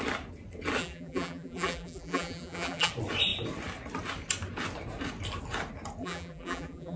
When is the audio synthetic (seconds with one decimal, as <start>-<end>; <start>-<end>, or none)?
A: 0.8-2.9; 6.0-7.0